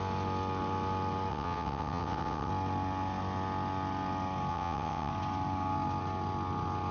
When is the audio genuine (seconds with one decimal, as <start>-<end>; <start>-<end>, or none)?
0.0-1.3; 2.5-4.5; 5.1-6.9